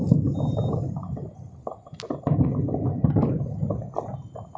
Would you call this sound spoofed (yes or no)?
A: no